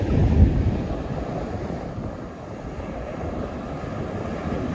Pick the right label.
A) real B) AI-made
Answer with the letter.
A